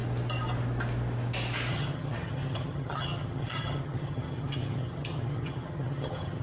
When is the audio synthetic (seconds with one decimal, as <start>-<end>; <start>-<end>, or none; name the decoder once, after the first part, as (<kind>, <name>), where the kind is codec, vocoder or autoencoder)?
1.7-6.4 (vocoder, HiFi-GAN)